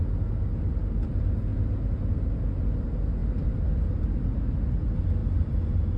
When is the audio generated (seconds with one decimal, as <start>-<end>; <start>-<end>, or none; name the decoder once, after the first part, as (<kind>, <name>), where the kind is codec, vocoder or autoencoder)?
none